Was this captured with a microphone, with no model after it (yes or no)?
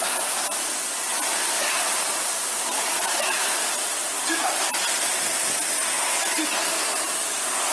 yes